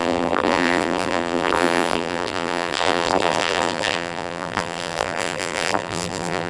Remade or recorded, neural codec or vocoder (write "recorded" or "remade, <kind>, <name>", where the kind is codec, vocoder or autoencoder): remade, vocoder, BigVGAN v2